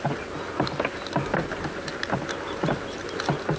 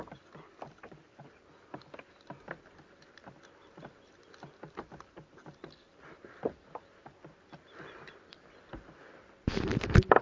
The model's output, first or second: second